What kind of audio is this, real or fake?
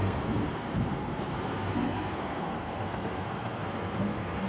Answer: fake